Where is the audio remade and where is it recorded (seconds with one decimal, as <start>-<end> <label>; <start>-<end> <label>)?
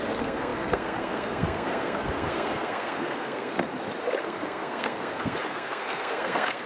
0.0-3.5 remade; 3.5-4.2 recorded; 4.2-6.7 remade